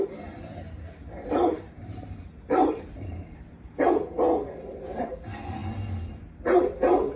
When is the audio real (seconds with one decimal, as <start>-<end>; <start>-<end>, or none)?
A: 0.0-1.0; 3.8-7.2